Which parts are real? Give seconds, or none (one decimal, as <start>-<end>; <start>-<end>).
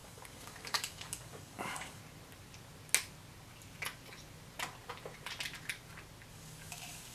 2.0-6.3